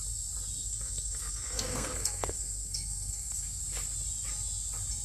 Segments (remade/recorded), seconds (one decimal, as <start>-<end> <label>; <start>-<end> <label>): 0.0-0.6 recorded; 0.6-3.6 remade; 3.6-5.0 recorded